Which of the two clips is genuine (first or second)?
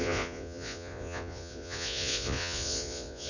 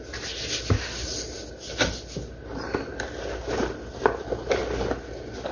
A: second